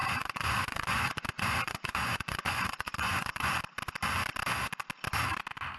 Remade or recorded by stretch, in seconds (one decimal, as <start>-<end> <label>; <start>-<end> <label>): 0.0-3.5 remade; 3.5-5.8 recorded